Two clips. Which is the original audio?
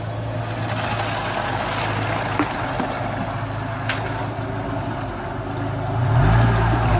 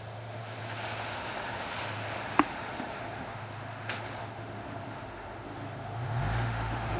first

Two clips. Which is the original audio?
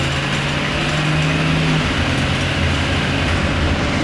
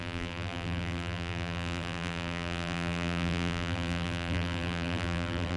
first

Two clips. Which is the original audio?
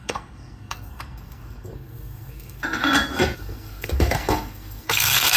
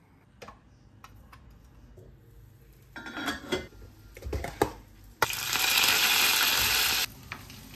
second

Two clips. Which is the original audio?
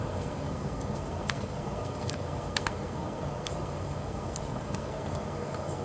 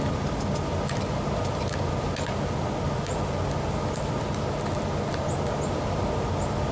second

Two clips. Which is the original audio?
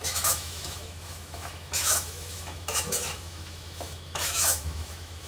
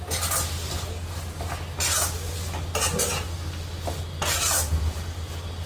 second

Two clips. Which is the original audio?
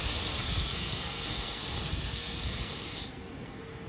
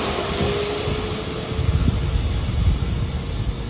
second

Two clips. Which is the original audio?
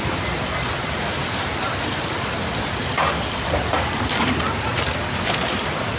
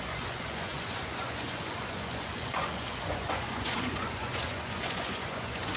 first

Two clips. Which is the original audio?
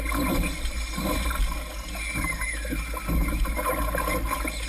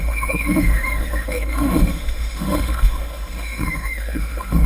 first